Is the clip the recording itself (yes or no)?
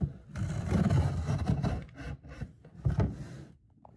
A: yes